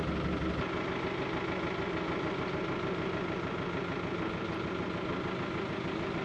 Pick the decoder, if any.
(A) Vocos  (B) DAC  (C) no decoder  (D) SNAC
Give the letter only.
C